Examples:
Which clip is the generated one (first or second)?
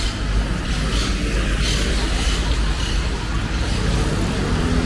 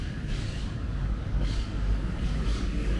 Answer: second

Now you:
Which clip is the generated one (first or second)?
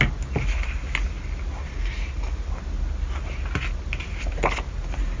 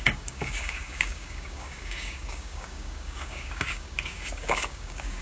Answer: second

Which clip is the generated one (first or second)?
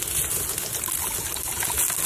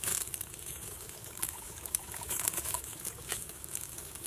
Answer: second